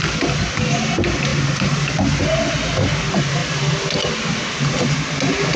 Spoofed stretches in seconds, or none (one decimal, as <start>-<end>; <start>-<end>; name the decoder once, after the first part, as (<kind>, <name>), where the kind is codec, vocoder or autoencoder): 1.3-2.2 (vocoder, BigVGAN v2); 3.4-4.4